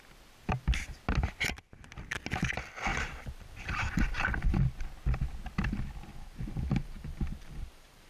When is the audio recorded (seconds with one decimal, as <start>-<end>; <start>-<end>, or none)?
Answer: 0.0-2.9; 4.6-6.1